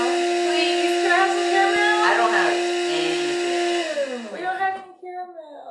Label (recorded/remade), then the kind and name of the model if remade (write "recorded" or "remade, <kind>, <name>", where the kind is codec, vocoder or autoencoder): recorded